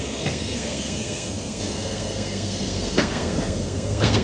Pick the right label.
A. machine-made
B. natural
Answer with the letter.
A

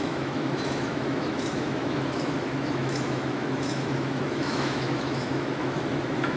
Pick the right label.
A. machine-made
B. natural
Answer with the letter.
A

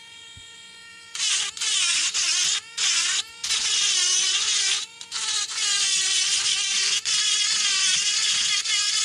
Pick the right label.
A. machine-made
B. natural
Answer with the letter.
A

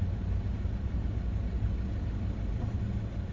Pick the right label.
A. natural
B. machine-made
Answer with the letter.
A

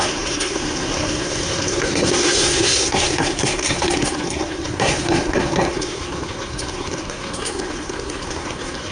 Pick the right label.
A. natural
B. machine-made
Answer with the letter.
B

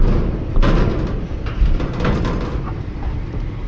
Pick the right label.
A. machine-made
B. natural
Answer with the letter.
B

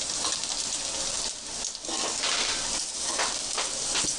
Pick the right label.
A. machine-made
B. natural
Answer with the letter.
B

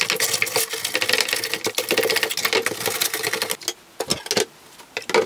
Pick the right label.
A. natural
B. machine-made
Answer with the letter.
A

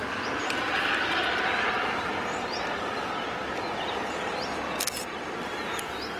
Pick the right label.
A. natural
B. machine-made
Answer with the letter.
A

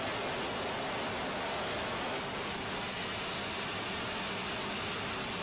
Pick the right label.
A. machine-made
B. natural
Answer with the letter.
B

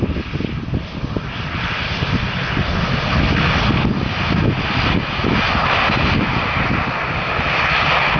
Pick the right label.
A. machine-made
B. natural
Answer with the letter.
B